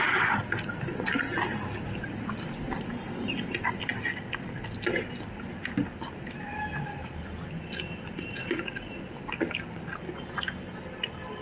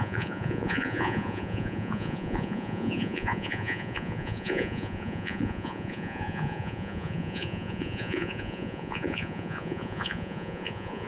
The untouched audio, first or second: first